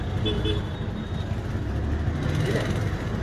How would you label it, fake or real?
real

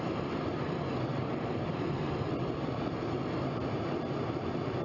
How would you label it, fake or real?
fake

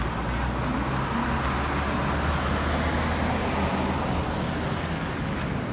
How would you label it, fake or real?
real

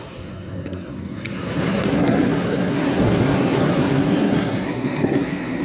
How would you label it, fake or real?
fake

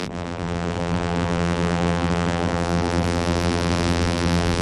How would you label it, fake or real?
fake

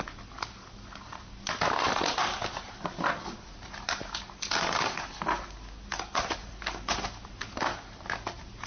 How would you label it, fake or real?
real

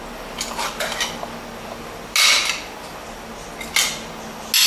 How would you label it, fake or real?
real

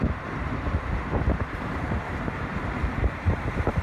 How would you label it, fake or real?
fake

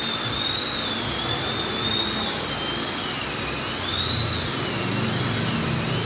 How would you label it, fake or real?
real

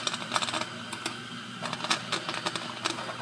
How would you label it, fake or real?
real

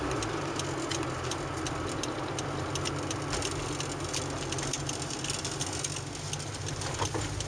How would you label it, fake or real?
real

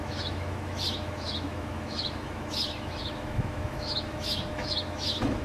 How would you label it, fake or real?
fake